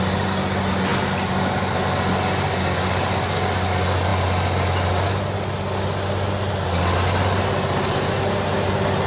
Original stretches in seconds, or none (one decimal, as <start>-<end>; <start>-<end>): 0.0-9.1